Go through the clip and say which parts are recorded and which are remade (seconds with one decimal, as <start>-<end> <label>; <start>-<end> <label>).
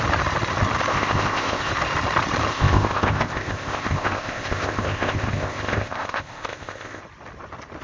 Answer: 0.0-0.9 recorded; 0.9-1.7 remade; 1.7-2.5 recorded; 2.5-7.0 remade; 7.0-7.8 recorded